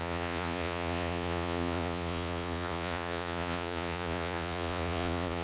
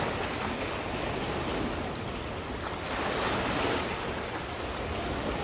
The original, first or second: second